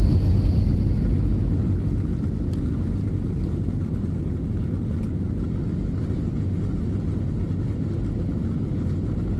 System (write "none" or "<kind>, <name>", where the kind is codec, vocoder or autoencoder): none